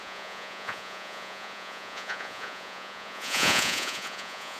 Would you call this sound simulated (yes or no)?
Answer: yes